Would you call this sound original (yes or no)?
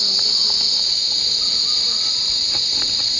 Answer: yes